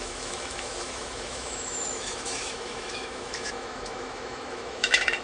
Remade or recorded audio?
remade